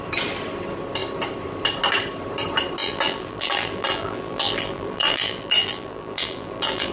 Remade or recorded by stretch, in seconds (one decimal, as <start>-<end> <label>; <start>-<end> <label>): 0.0-2.8 recorded; 2.8-6.9 remade